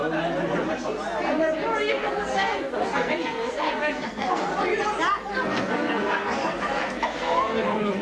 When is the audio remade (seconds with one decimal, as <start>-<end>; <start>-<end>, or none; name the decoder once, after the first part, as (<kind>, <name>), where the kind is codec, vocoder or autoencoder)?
1.9-4.5 (codec, SNAC); 5.3-8.0